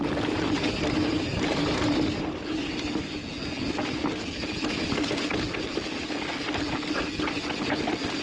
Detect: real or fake real